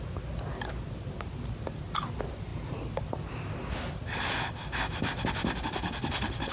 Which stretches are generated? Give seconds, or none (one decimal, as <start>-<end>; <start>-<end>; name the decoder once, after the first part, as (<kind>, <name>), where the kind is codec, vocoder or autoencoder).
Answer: none